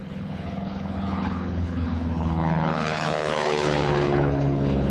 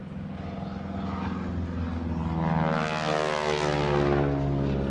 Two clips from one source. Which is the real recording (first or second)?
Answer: second